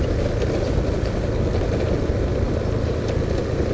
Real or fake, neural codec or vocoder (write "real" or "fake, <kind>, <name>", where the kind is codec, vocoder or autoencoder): real